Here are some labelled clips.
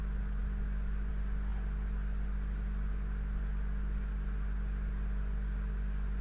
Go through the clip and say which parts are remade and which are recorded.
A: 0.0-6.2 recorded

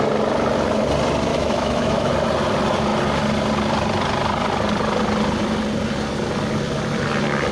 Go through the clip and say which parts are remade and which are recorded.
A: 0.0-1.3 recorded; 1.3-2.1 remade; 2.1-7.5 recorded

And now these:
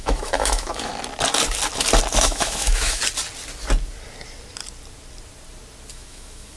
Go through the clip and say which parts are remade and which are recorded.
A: 0.0-0.9 remade; 0.9-2.2 recorded; 2.2-3.0 remade; 3.0-5.9 recorded; 5.9-6.6 remade

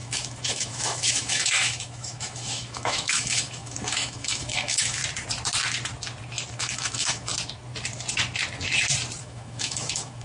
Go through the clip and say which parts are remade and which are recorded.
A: 0.0-5.0 remade; 5.0-6.5 recorded; 6.5-7.3 remade; 7.3-9.2 recorded; 9.2-10.2 remade

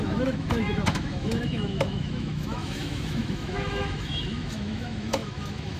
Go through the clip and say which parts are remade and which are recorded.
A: 0.0-5.8 remade

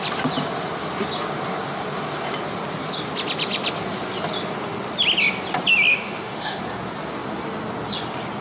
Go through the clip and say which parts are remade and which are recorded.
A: 0.0-5.9 recorded; 5.9-6.6 remade; 6.6-8.4 recorded

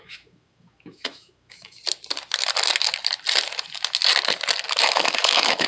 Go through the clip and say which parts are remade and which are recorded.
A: 0.0-1.8 remade; 1.8-4.8 recorded; 4.8-5.7 remade

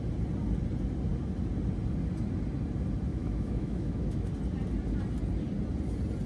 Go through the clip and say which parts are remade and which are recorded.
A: 0.0-3.1 recorded; 3.1-4.3 remade; 4.3-6.3 recorded